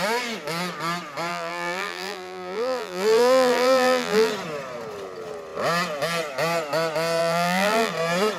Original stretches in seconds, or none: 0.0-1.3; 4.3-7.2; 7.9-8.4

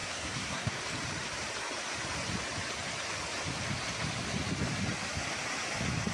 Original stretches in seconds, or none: 0.8-6.1

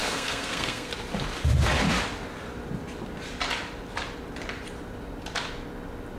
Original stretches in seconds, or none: 0.9-6.2

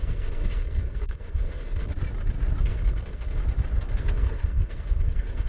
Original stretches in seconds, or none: 1.9-2.6; 3.4-4.0

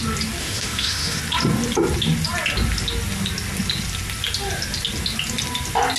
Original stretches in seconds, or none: 0.0-0.4; 1.2-6.0